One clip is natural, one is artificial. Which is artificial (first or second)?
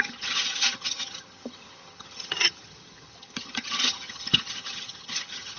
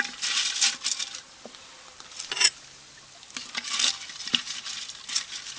first